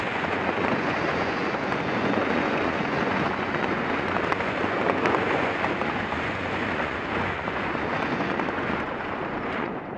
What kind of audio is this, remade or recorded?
remade